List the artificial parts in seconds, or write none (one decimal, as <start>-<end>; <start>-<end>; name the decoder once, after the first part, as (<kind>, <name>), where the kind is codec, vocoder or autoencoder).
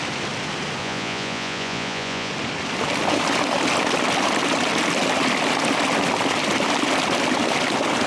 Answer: 0.8-2.3 (vocoder, Vocos)